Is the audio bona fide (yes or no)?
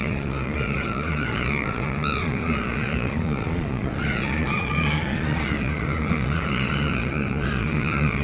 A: no